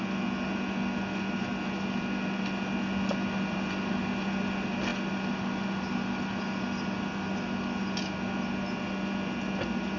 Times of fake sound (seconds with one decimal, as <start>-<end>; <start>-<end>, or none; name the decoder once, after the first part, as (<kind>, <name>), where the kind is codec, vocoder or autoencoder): none